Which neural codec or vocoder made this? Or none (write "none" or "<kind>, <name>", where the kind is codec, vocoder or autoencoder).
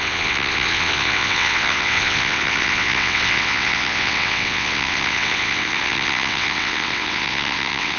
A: vocoder, WaveNeXt